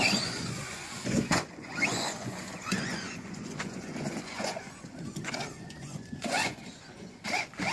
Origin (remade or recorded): remade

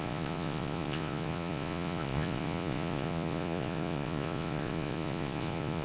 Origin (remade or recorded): remade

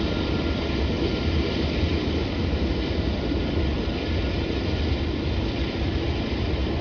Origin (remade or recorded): recorded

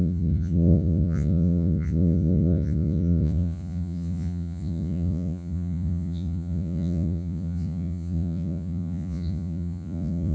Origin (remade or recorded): remade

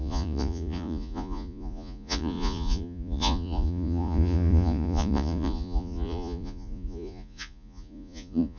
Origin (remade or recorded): remade